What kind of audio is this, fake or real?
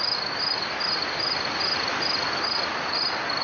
real